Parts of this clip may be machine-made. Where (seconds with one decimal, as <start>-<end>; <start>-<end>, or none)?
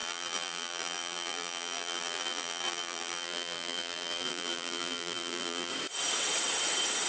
0.0-5.7